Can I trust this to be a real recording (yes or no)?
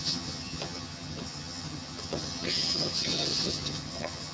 no